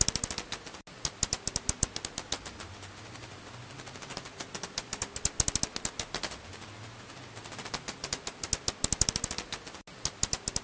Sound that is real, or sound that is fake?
real